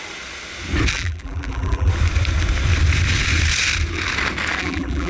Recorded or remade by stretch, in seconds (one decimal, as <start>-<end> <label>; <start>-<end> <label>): 0.0-0.9 recorded; 0.9-1.9 remade; 1.9-4.6 recorded; 4.6-5.1 remade